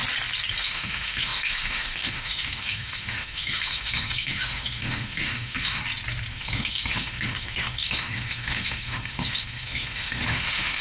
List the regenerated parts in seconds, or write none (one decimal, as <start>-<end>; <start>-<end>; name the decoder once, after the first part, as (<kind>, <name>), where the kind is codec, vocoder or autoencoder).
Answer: 0.6-5.8 (autoencoder, DAC-VAE); 6.3-10.8